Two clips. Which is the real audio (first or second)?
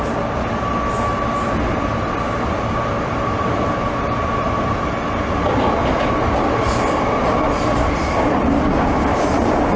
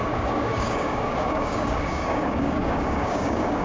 first